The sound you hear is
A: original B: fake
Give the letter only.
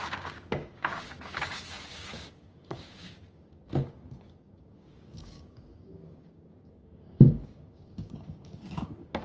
B